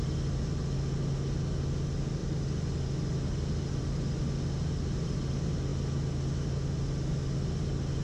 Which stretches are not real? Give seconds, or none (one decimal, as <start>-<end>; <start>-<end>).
none